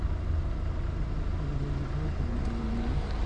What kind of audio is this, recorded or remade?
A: recorded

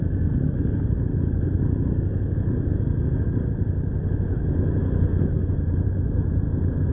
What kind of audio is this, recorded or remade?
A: recorded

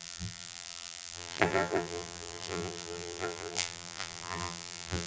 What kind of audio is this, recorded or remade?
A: remade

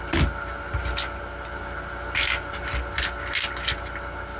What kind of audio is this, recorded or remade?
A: recorded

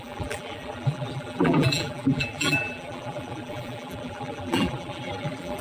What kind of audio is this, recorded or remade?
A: remade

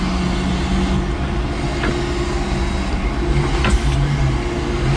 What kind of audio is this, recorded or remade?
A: recorded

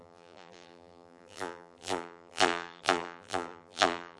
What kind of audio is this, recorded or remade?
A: remade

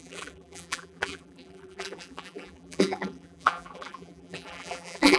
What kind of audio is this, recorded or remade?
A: remade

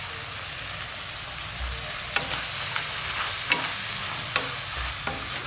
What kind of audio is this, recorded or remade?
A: recorded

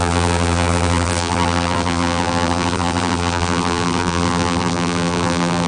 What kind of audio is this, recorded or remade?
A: remade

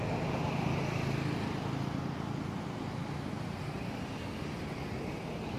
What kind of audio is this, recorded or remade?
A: recorded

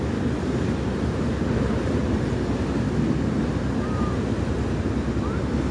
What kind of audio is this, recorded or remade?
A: recorded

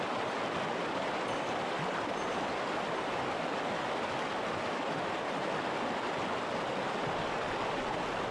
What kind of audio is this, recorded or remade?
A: recorded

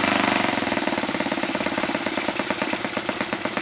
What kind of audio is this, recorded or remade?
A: remade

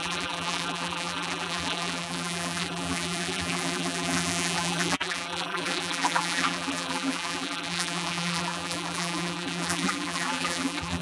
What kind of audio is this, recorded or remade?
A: remade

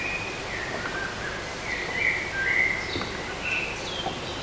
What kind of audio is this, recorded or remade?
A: recorded